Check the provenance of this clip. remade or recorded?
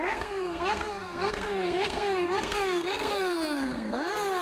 remade